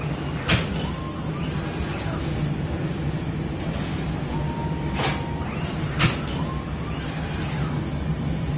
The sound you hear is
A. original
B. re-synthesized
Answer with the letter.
A